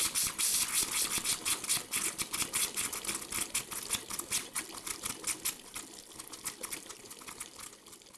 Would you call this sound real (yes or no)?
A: yes